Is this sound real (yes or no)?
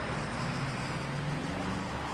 yes